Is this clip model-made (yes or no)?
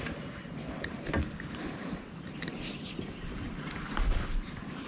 yes